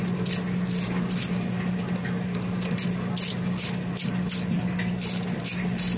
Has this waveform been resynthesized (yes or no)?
no